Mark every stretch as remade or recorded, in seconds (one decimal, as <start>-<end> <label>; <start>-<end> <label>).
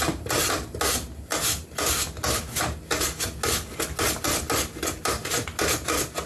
0.0-6.3 recorded